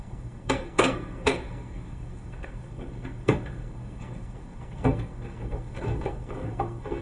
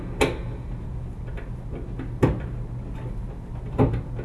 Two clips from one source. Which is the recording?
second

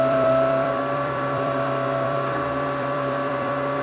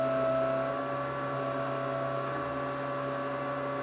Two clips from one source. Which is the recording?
second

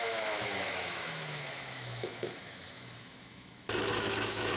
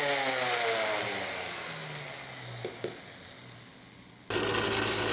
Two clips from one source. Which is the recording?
second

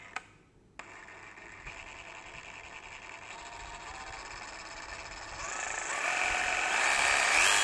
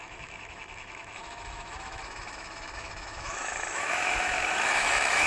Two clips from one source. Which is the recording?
first